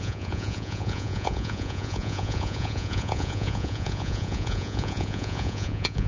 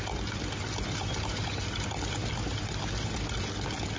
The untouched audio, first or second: second